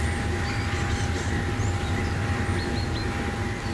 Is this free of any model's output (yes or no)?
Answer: yes